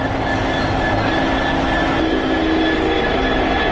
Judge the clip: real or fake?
real